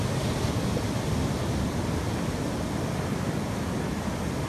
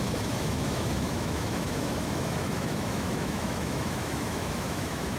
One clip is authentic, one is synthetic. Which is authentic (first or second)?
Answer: first